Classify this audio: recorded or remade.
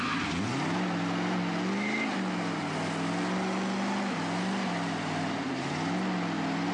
recorded